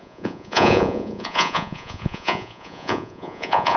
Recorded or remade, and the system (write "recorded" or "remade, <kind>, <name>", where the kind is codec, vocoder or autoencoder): remade, vocoder, Vocos